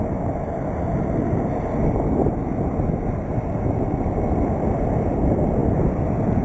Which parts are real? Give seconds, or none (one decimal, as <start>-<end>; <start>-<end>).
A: 0.0-6.4